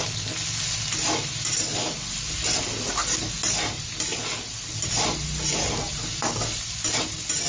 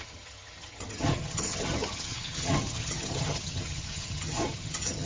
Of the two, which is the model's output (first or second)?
second